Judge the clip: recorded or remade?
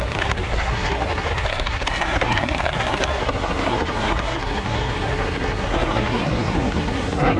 remade